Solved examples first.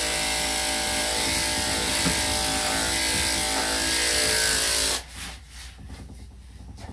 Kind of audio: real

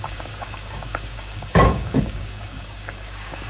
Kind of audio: fake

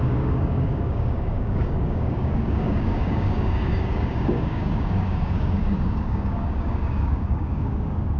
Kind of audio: fake